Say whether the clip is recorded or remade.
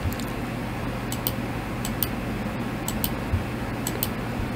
recorded